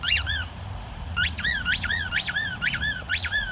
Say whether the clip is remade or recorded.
remade